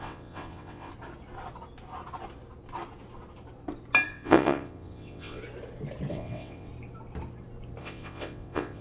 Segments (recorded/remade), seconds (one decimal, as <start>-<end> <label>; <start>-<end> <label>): 0.0-0.9 remade; 0.9-4.1 recorded; 4.1-5.4 remade; 5.4-6.1 recorded; 6.1-6.7 remade; 6.7-7.8 recorded; 7.8-8.8 remade